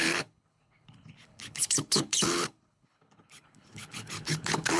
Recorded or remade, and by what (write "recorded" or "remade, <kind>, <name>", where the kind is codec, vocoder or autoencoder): remade, codec, HILCodec